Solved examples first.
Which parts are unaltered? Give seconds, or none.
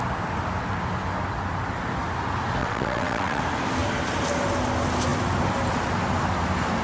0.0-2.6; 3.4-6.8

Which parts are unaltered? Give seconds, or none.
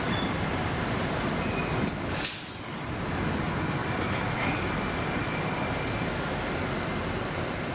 0.0-0.5; 1.0-7.7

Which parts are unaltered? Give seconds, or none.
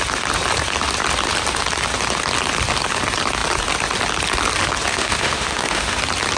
0.0-4.9; 6.0-6.4